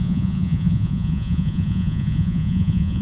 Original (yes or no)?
no